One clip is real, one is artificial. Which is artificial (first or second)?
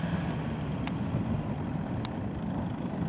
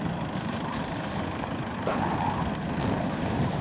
first